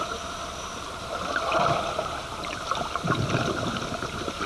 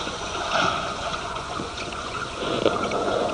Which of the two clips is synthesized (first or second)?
second